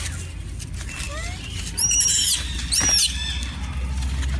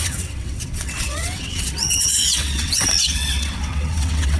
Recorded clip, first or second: first